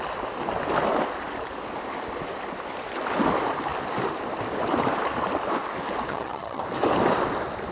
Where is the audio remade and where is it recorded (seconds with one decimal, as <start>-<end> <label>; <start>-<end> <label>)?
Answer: 0.0-6.1 recorded; 6.1-6.6 remade; 6.6-7.7 recorded